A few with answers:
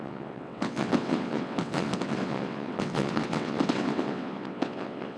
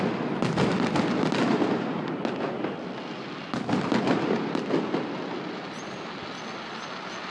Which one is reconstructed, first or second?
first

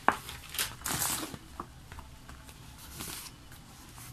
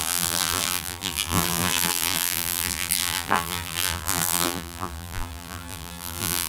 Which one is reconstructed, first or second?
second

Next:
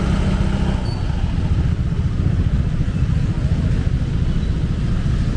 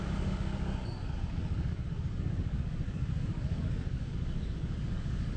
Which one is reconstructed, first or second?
second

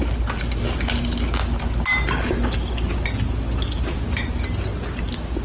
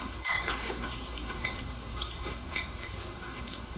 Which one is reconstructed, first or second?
second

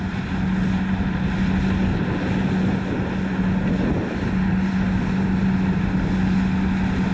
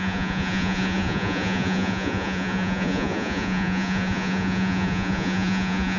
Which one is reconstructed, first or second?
second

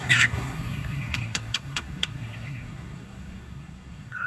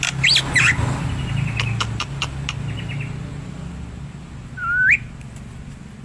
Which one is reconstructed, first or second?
first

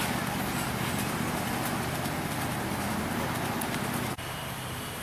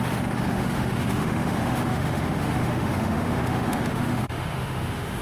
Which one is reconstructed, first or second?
second